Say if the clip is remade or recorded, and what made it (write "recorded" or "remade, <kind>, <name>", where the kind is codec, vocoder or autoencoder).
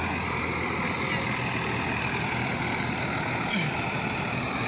recorded